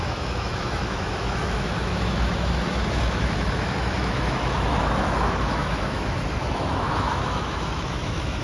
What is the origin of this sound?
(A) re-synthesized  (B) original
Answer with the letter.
A